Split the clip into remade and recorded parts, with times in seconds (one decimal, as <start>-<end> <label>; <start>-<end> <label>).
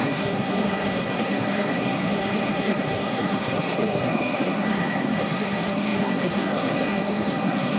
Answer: 0.0-7.8 remade